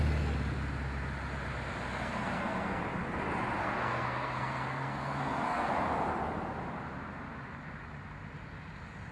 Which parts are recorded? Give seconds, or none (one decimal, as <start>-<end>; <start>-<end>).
0.0-1.9; 2.8-3.6; 5.7-9.1